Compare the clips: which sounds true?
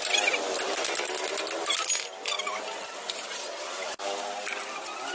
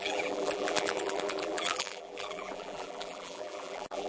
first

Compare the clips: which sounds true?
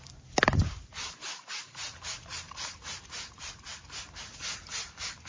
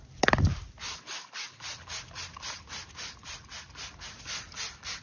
second